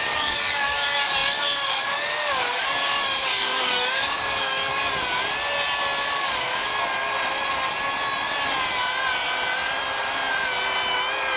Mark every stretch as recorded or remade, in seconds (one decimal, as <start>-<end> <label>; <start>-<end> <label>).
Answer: 0.0-4.7 remade; 4.7-6.1 recorded; 6.1-6.7 remade; 6.7-11.4 recorded